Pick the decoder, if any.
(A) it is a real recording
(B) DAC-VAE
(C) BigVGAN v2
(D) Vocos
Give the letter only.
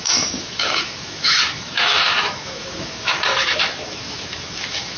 B